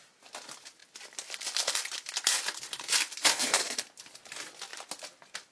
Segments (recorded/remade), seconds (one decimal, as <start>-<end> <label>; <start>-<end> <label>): 0.0-3.2 recorded; 3.2-3.8 remade; 3.8-5.5 recorded